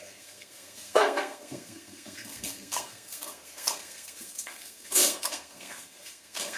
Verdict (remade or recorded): remade